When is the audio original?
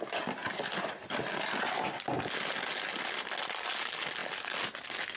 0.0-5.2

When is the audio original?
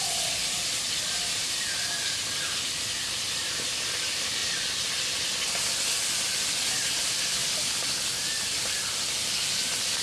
0.0-1.4; 2.0-10.0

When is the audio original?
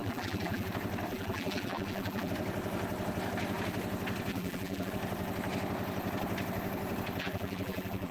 0.7-1.1; 2.3-4.3; 4.9-7.2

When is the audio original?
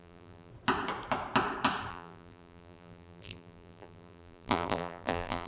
0.5-1.9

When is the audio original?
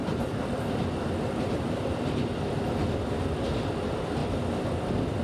3.1-5.2